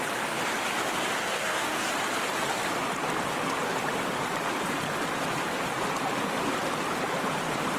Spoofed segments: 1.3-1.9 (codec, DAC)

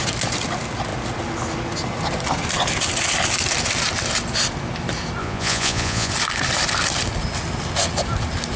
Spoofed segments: 5.2-6.1 (vocoder, Vocos)

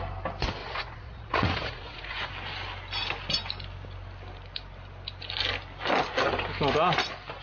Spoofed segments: 0.6-2.3 (vocoder, Vocos)

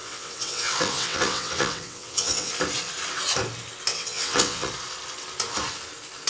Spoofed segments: 0.0-2.5 (vocoder, WaveNeXt); 3.9-4.7

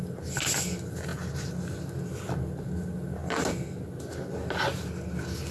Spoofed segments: none